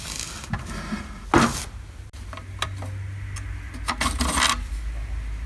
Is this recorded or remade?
recorded